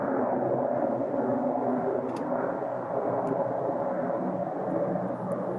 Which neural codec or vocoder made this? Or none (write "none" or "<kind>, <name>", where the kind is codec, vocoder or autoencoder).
none